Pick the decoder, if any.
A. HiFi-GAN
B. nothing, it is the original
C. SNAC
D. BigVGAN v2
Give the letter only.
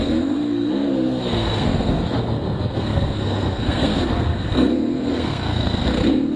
C